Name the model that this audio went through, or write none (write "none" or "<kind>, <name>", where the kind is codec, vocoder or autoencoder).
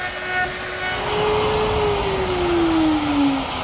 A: none